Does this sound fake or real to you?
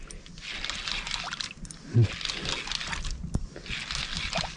real